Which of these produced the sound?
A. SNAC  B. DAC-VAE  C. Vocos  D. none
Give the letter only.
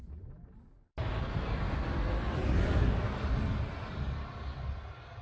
D